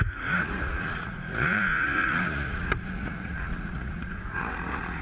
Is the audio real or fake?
fake